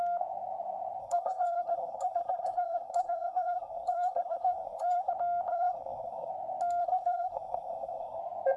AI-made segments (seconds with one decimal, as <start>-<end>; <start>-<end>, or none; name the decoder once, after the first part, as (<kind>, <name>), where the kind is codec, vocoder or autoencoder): 1.0-5.1 (codec, SNAC); 5.5-6.3; 6.8-8.2